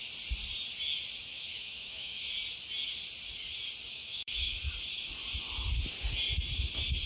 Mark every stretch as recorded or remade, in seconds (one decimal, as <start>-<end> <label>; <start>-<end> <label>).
0.0-1.3 recorded; 1.3-2.3 remade; 2.3-3.9 recorded; 3.9-4.7 remade; 4.7-7.1 recorded